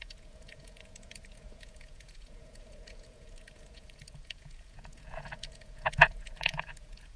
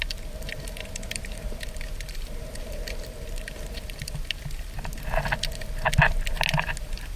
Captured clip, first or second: second